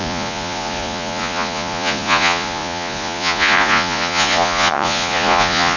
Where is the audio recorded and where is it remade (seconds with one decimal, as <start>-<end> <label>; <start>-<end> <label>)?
0.0-5.8 remade